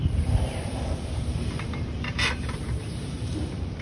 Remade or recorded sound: remade